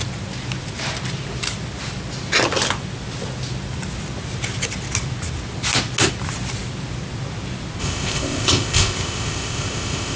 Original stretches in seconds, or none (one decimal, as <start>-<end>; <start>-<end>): 0.0-7.8